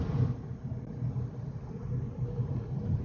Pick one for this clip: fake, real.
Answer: real